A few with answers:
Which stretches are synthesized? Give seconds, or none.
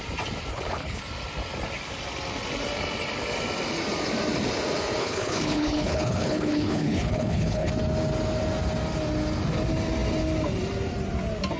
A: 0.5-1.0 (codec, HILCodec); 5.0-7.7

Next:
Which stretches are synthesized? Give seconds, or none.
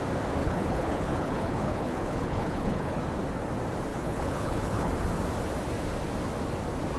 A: 0.4-3.0 (codec, HILCodec); 3.9-4.9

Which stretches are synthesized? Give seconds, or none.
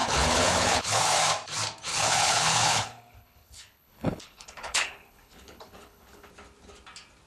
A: 0.0-1.0 (codec, HILCodec); 1.9-6.3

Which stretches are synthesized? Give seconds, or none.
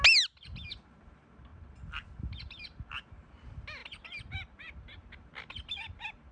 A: none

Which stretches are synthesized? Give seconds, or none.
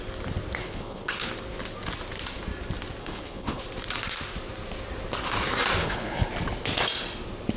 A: 0.6-1.3 (codec, HILCodec); 3.0-3.6; 5.8-6.3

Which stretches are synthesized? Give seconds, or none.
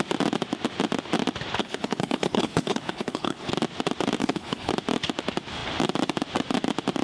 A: 1.6-3.5 (codec, HILCodec); 4.2-4.7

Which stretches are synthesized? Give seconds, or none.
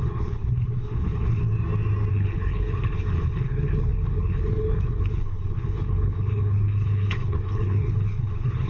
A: 0.0-1.4 (codec, HILCodec); 2.1-8.7